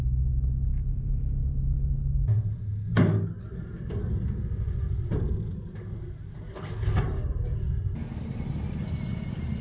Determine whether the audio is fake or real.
real